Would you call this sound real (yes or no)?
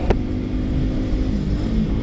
yes